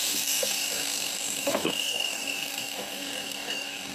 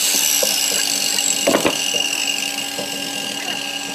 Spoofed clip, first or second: first